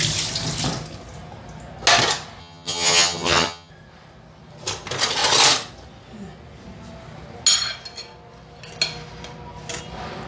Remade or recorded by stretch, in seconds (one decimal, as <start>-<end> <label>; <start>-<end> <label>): 0.0-2.4 recorded; 2.4-3.7 remade; 3.7-10.3 recorded